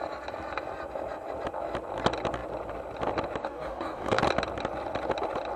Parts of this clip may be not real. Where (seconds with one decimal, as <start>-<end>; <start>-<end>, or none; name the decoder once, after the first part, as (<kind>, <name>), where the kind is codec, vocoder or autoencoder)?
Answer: 3.4-4.2 (codec, DAC)